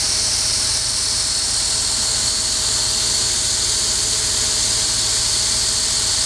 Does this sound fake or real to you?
real